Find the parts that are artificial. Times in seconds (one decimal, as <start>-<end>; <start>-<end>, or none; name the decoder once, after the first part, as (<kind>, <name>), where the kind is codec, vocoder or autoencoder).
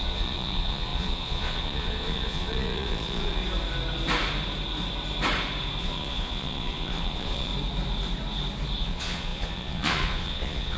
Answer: 0.0-3.4 (vocoder, Vocos); 5.8-7.5; 8.8-10.8